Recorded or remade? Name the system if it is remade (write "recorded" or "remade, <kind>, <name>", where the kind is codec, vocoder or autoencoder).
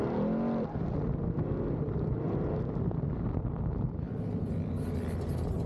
recorded